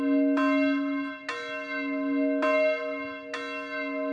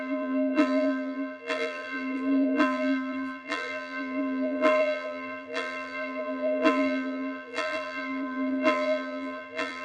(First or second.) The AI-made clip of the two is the second